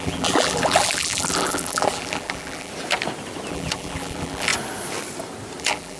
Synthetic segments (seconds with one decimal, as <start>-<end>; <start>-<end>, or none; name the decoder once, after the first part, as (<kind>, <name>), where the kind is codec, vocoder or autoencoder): 0.0-2.7 (vocoder, BigVGAN v2); 3.5-4.5; 5.6-6.0